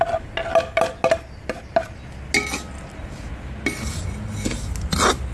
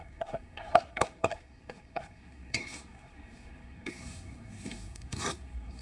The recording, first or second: first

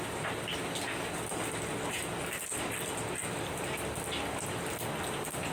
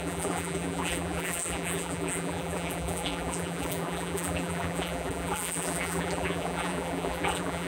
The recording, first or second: first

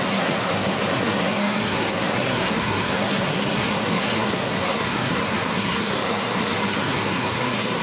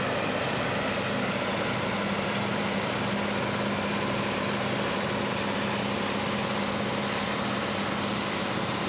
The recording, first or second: second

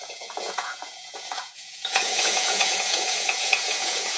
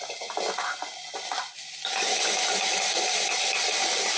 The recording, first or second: second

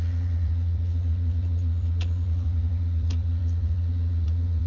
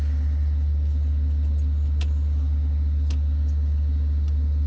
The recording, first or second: second